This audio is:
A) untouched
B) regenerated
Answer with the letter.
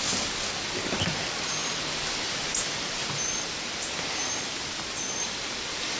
A